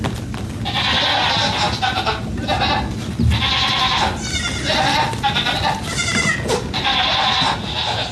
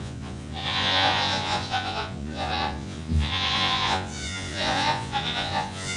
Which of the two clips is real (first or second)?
first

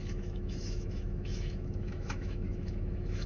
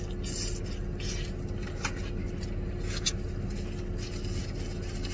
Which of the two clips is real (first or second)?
second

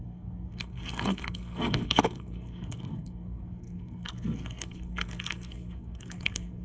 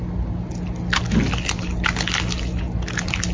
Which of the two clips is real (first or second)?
second